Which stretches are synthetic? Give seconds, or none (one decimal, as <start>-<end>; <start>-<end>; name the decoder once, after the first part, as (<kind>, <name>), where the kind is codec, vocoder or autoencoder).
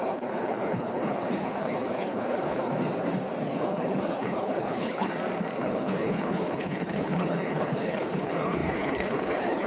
0.0-2.7 (codec, HILCodec); 3.4-5.1; 5.6-9.7